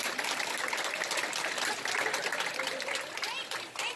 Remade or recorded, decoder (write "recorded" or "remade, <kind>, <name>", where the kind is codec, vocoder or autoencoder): recorded